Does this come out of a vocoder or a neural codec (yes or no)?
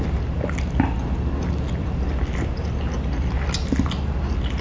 no